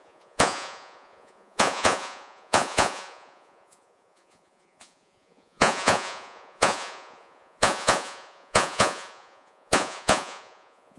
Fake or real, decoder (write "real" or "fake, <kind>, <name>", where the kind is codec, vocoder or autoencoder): fake, vocoder, Vocos